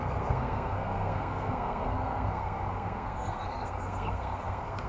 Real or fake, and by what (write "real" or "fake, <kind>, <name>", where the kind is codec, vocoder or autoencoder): fake, codec, SNAC